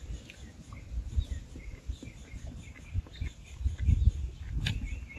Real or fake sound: real